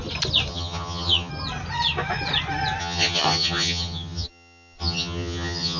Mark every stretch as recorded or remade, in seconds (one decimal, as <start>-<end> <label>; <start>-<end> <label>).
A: 0.0-0.5 recorded; 0.5-1.3 remade; 1.3-2.8 recorded; 2.8-5.8 remade